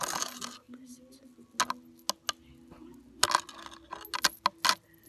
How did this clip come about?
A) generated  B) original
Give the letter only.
B